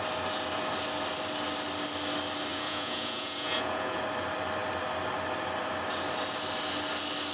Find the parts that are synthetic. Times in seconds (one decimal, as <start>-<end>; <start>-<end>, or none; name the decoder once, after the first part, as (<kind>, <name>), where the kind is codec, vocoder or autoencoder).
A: 2.5-4.0 (vocoder, Vocos)